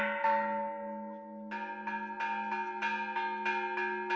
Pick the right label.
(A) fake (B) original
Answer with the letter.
B